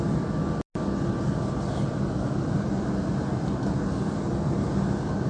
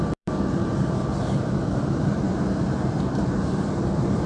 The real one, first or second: first